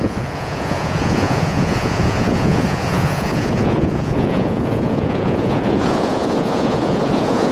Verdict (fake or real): fake